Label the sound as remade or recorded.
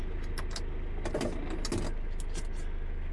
recorded